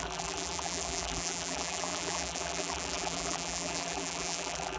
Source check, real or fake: fake